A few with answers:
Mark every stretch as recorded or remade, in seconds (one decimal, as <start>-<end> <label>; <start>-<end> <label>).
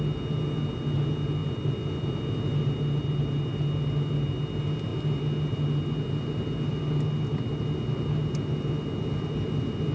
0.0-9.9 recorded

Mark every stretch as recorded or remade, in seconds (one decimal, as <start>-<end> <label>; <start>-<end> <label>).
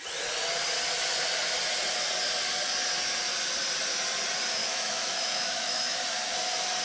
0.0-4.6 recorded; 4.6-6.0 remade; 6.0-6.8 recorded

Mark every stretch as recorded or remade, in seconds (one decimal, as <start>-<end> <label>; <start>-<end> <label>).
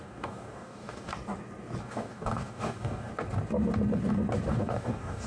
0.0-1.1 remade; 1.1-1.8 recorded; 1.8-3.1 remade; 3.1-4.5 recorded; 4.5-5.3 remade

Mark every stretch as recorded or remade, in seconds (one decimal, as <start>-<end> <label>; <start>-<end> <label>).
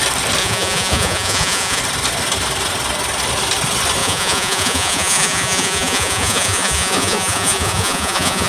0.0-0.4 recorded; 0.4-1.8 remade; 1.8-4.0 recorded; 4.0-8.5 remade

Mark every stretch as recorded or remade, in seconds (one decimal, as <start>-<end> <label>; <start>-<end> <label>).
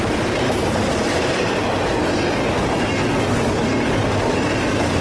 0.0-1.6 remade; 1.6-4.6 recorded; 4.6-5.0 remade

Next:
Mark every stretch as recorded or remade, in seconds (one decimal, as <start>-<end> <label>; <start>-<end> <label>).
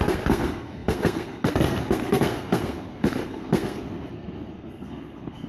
0.0-5.5 remade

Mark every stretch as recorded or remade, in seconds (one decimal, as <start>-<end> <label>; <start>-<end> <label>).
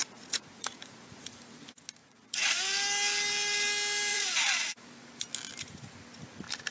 0.0-1.4 remade; 1.4-2.0 recorded; 2.0-2.6 remade; 2.6-4.1 recorded; 4.1-4.7 remade; 4.7-6.7 recorded